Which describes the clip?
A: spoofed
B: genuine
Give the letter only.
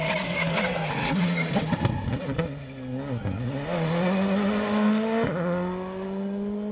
B